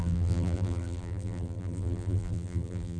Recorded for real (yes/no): no